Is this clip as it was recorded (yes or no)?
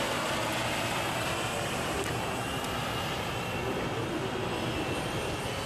yes